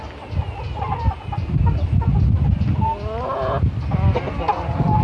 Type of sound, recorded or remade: recorded